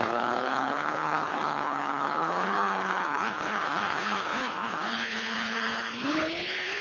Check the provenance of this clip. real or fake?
fake